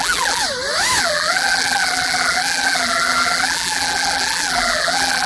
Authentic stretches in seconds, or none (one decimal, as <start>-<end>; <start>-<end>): 0.4-1.0